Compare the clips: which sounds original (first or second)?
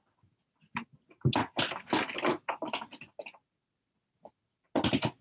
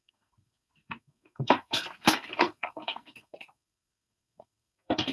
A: first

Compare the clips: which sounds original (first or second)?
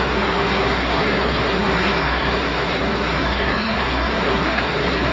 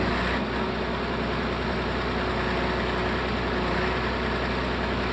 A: second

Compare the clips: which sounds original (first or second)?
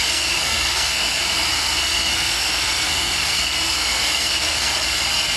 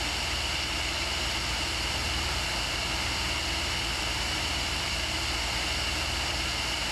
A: second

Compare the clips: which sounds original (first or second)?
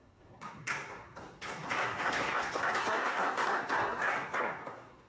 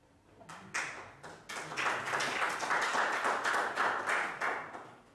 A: second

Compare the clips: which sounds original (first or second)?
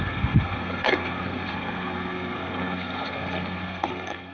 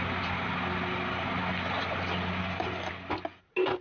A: second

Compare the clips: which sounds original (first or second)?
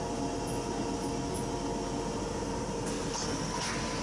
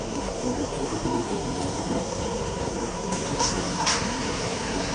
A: first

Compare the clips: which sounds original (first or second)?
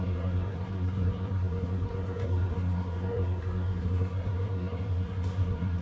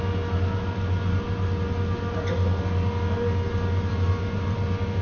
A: second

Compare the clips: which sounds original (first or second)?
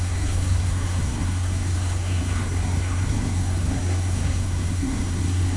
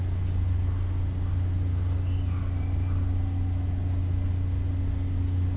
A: second